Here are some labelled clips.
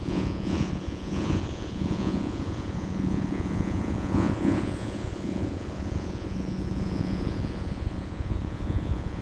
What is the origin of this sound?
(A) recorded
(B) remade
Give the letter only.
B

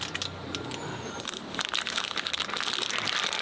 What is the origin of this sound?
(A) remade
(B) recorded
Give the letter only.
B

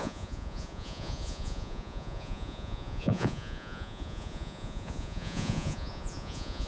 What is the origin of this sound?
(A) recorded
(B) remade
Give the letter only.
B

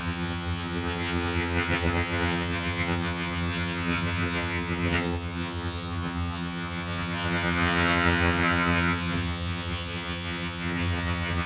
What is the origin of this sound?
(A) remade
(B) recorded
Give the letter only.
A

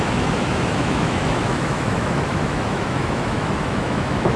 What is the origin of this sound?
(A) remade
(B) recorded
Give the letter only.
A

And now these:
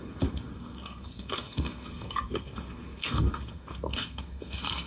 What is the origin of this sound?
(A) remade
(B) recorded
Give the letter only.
A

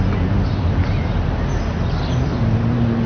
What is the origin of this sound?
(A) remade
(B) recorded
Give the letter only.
B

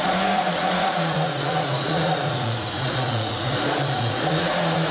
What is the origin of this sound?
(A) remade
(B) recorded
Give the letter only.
A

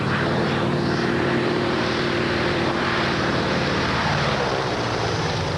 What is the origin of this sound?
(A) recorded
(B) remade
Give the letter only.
B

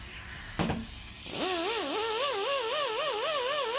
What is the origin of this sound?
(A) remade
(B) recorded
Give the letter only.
B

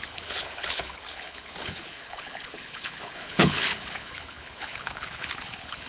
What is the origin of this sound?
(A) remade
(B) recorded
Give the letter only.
A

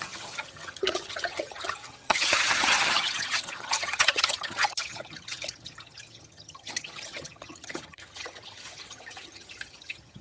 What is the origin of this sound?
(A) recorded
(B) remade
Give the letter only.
B